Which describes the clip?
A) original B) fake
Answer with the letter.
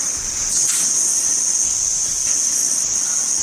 A